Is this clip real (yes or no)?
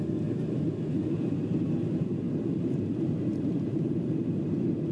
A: no